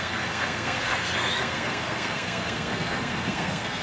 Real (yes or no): no